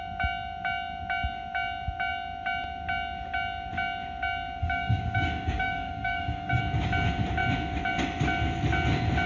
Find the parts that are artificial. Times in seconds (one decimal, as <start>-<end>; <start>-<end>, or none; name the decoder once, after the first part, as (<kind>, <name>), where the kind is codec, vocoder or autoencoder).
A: 4.6-6.6 (codec, DAC)